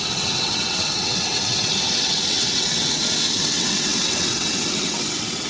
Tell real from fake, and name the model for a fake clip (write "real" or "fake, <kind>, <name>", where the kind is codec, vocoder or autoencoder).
fake, vocoder, WaveNeXt